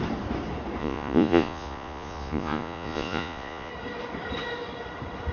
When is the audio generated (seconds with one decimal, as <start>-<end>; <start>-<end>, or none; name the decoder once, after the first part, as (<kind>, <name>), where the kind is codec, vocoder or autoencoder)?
0.8-3.7 (vocoder, Vocos)